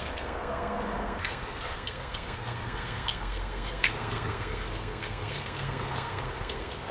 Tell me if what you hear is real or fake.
fake